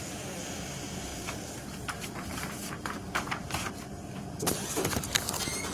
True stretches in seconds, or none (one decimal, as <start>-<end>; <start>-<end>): 0.0-1.1; 3.7-5.7